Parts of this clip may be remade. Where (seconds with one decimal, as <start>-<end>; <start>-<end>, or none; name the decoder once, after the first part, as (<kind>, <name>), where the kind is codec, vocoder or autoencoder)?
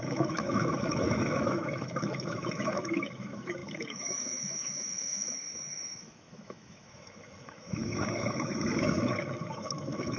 0.0-10.2 (autoencoder, DAC-VAE)